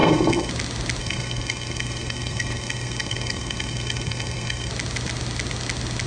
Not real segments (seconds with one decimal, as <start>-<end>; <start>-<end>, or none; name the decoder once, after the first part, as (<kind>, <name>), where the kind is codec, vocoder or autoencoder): 0.0-0.5 (codec, SNAC); 1.0-4.7